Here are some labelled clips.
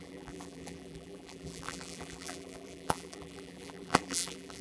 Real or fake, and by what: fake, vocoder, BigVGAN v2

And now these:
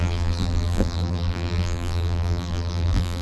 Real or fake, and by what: fake, vocoder, BigVGAN v2